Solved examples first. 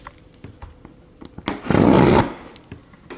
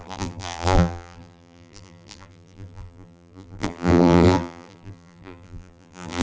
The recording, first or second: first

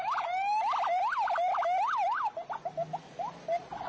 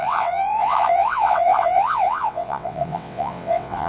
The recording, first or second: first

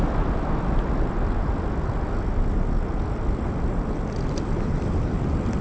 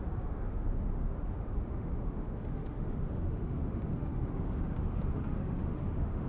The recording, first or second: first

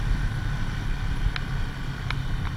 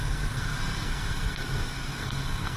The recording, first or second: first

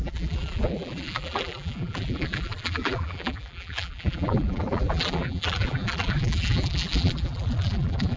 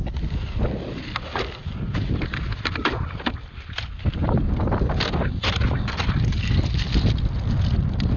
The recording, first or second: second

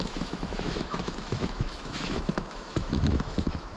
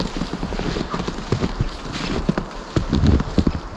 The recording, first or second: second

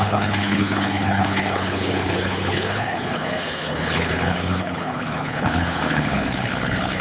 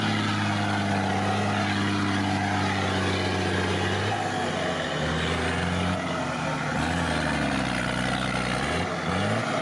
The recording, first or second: second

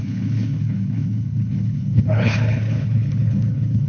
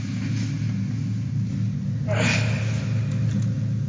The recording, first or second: second